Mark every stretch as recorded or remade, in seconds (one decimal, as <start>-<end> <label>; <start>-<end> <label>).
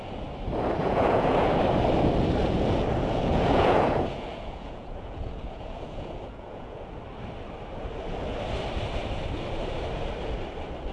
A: 0.0-0.8 recorded; 0.8-1.6 remade; 1.6-2.4 recorded; 2.4-6.9 remade; 6.9-10.9 recorded